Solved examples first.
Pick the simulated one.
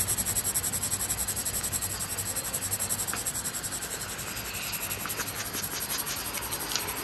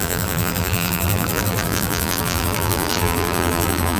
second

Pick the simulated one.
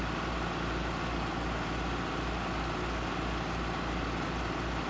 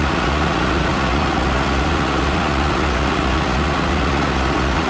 second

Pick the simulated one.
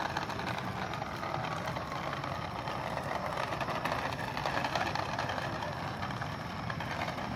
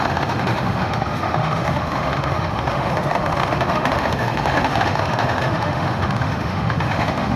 second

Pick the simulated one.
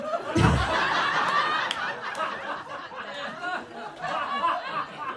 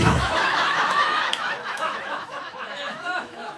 second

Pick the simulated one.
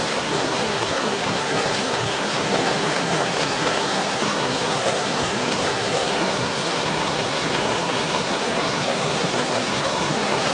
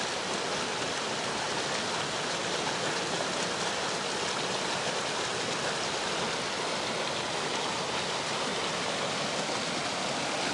first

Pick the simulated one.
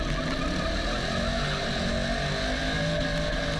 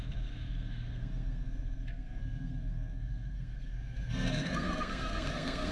second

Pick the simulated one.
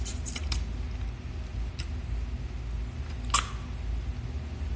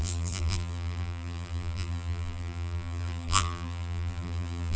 second